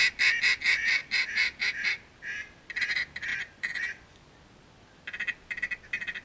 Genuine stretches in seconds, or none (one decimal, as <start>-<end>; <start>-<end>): 0.0-3.3; 4.4-6.2